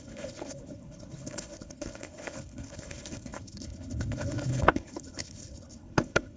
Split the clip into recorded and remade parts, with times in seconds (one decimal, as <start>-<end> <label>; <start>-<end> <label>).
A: 0.0-6.4 remade